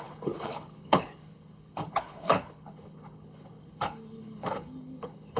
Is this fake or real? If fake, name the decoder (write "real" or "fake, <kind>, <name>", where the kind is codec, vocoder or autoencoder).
fake, codec, HILCodec